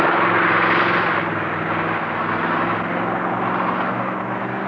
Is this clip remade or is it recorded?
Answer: recorded